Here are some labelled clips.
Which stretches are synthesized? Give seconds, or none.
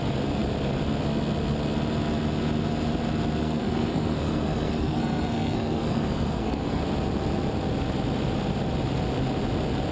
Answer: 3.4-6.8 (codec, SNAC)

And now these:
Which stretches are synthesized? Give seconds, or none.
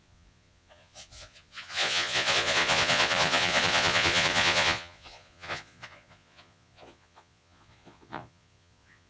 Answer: 0.0-9.1 (vocoder, Vocos)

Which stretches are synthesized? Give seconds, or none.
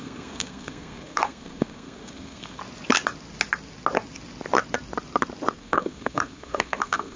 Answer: 0.0-2.6 (codec, SNAC); 5.5-7.2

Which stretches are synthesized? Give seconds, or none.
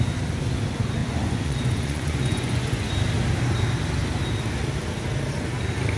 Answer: 1.0-2.9 (vocoder, Vocos)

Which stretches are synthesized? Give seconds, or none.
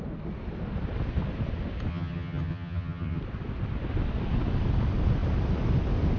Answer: 1.9-3.2 (vocoder, HiFi-GAN)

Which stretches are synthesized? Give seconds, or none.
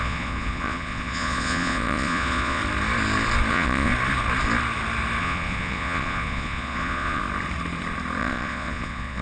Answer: 0.0-2.6 (vocoder, Vocos); 3.5-3.9; 5.2-7.2; 8.2-9.2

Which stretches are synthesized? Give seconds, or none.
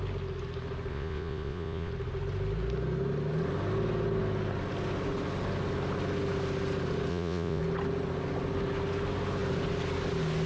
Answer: 0.9-1.9 (vocoder, Vocos); 7.1-7.6